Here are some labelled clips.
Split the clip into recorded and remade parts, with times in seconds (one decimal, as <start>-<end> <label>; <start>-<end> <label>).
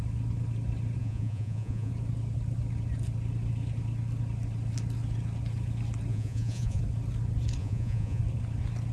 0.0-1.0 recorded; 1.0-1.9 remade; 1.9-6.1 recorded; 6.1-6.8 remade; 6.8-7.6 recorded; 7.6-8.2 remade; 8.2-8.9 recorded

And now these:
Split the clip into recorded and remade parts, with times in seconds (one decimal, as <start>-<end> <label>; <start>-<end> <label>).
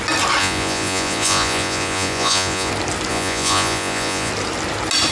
0.0-0.4 recorded; 0.4-2.7 remade; 2.7-3.1 recorded; 3.1-4.3 remade; 4.3-5.1 recorded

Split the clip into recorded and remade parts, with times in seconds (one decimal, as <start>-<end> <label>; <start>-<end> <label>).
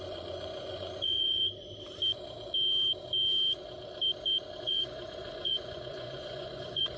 0.0-1.4 remade; 1.4-4.6 recorded; 4.6-7.0 remade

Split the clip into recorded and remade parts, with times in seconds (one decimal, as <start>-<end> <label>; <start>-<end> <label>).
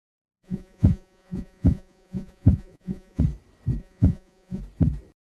0.0-3.2 remade; 3.2-3.8 recorded; 3.8-4.6 remade; 4.6-5.3 recorded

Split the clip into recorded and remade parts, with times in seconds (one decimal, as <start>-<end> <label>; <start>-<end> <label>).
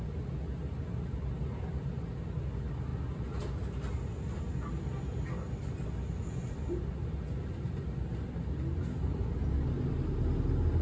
0.0-10.8 recorded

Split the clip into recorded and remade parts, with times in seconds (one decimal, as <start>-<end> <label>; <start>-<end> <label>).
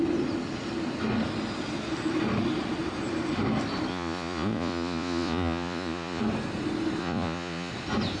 0.0-3.9 recorded; 3.9-6.2 remade; 6.2-7.0 recorded; 7.0-7.7 remade; 7.7-8.2 recorded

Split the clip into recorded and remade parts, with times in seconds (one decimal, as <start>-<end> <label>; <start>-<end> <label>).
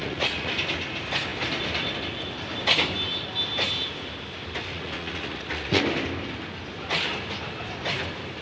0.0-0.5 remade; 0.5-4.7 recorded; 4.7-5.8 remade; 5.8-8.4 recorded